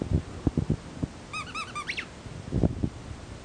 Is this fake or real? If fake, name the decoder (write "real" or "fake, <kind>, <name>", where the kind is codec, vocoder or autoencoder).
real